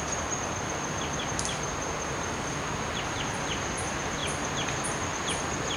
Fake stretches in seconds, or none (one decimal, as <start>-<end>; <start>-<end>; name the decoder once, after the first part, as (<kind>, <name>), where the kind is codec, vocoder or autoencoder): none